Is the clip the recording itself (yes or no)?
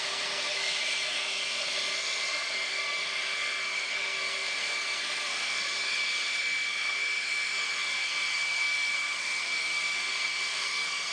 no